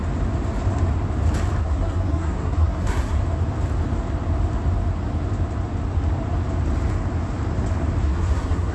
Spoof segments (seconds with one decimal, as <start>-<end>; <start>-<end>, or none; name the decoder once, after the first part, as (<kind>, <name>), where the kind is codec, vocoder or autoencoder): 1.6-3.2 (codec, SNAC); 8.0-8.7